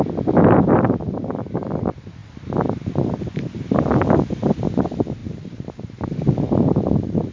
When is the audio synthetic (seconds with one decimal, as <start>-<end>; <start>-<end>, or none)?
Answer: 5.2-7.3